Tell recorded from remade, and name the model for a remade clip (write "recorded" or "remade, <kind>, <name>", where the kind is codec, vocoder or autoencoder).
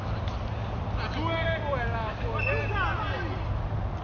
recorded